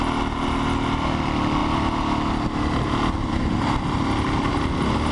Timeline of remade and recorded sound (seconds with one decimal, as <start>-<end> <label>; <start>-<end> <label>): 0.0-5.1 recorded